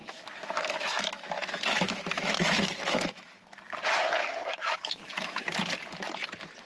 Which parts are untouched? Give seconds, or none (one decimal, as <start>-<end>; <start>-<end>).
3.6-4.2; 5.4-6.7